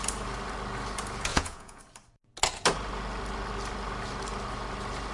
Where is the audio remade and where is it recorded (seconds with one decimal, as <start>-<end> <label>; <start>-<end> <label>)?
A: 0.0-1.3 recorded; 1.3-1.8 remade; 1.8-5.1 recorded